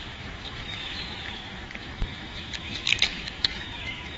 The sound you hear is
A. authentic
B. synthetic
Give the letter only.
B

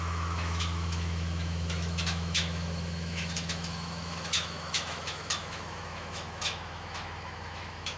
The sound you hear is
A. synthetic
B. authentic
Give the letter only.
A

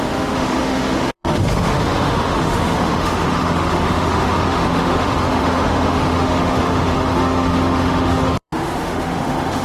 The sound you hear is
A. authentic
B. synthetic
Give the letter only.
B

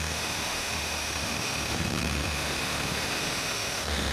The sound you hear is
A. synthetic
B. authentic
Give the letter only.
A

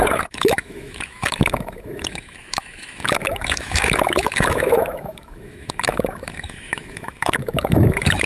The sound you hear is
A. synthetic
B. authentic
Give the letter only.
A